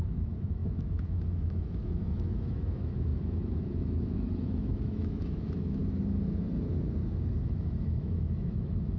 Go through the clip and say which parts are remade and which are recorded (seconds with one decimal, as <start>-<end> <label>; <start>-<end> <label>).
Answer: 0.0-5.8 remade; 5.8-7.4 recorded; 7.4-9.0 remade